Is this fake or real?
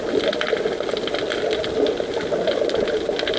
real